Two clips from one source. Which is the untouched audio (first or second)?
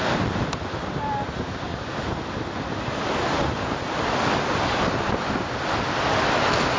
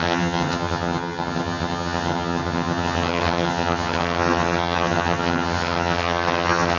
first